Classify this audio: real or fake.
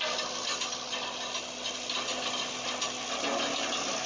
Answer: real